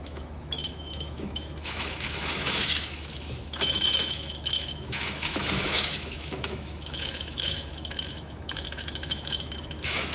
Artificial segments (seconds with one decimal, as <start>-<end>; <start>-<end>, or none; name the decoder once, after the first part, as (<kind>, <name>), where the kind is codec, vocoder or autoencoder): 0.0-10.1 (autoencoder, DAC-VAE)